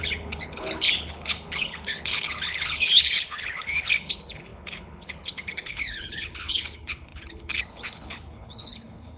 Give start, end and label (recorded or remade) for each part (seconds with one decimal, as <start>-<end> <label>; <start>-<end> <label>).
0.0-9.2 remade